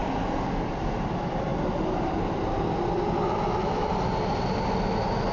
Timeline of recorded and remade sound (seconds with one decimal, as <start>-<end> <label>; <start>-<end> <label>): 0.0-5.3 recorded